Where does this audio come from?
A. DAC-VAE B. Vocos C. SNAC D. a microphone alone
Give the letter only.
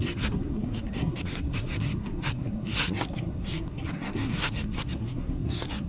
C